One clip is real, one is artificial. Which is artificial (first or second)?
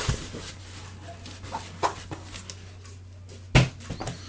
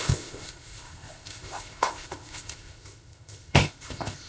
second